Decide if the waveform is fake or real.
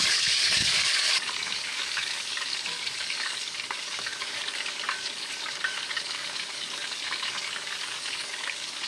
fake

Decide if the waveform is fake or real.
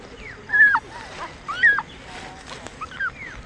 real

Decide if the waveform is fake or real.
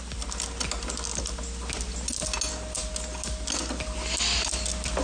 real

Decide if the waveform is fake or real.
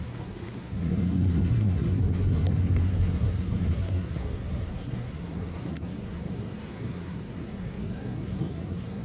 fake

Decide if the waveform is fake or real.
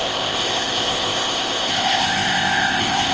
fake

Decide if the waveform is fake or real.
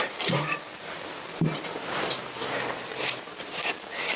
fake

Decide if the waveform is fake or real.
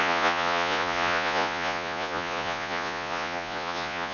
fake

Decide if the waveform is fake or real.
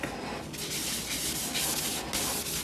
real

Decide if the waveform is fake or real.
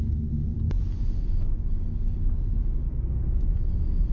real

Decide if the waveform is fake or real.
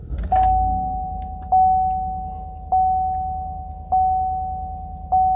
real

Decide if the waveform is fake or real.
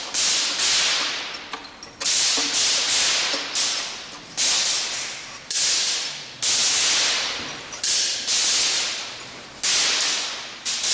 real